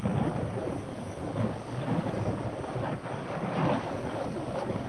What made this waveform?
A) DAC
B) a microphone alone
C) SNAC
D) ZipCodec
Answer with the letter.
A